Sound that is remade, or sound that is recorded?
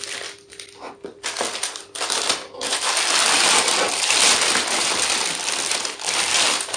remade